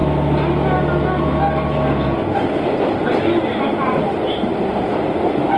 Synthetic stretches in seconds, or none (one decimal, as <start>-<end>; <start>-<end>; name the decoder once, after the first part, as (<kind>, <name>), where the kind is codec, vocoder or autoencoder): none